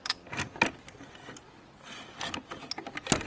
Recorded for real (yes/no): yes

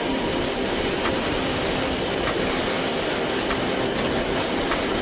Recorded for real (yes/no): yes